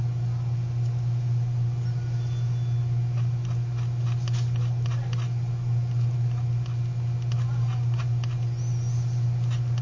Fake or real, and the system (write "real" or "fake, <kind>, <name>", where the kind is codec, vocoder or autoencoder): real